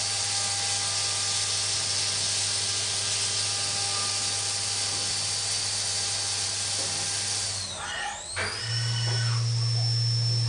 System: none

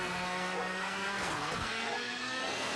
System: codec, SNAC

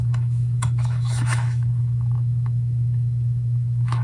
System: autoencoder, DAC-VAE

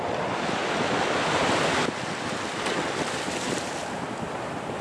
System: none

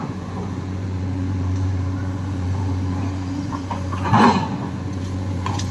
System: vocoder, Vocos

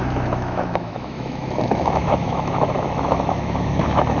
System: autoencoder, DAC-VAE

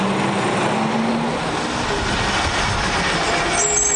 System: none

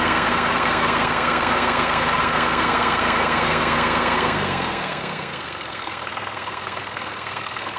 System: codec, SNAC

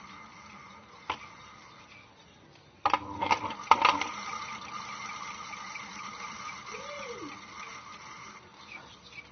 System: none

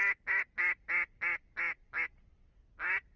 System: none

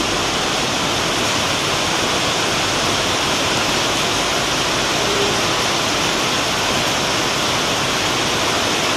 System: vocoder, BigVGAN v2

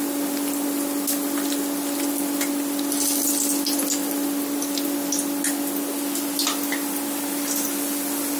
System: none